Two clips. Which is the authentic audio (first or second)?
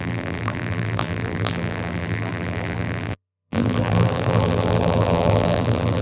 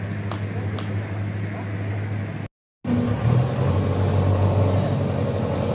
second